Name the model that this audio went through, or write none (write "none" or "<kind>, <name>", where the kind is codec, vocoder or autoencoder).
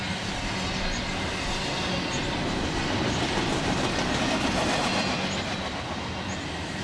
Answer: none